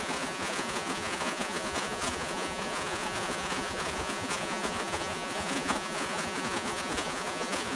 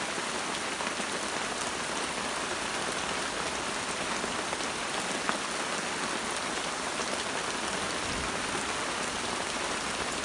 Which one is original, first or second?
second